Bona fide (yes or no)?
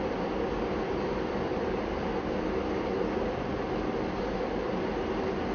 yes